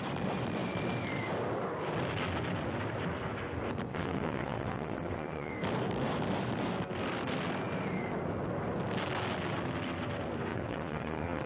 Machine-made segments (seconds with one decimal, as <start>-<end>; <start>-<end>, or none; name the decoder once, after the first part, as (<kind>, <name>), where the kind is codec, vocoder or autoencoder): 3.9-5.5 (vocoder, WaveNeXt); 10.5-11.5